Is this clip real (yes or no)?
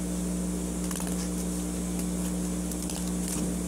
yes